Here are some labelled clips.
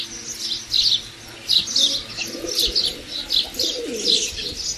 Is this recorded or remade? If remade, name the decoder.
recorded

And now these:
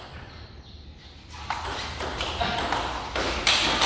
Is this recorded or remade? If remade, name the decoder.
recorded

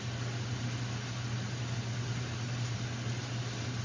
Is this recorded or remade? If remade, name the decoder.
recorded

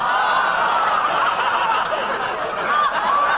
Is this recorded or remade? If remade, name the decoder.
recorded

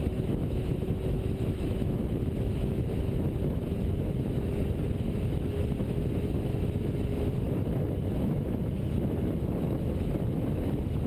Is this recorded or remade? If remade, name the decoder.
remade, autoencoder, DAC-VAE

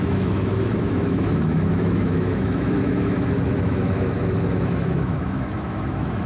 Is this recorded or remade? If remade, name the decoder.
remade, autoencoder, DAC-VAE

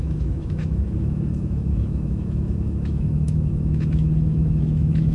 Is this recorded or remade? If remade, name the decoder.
remade, autoencoder, DAC-VAE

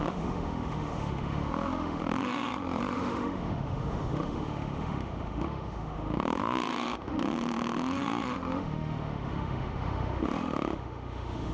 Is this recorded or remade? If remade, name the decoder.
remade, autoencoder, DAC-VAE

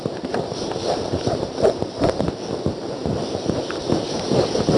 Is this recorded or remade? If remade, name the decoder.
recorded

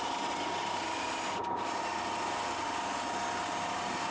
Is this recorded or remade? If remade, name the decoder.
recorded